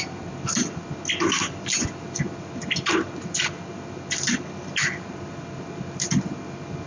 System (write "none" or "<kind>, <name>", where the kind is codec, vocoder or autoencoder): none